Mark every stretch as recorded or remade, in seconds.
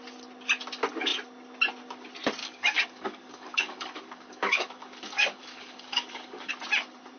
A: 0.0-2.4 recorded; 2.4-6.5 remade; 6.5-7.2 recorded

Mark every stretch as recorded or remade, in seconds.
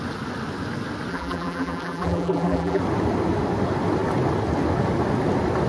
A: 0.0-1.1 recorded; 1.1-2.8 remade; 2.8-5.7 recorded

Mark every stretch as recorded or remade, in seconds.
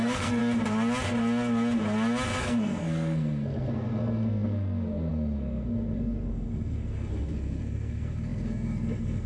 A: 0.0-0.4 remade; 0.4-2.4 recorded; 2.4-9.3 remade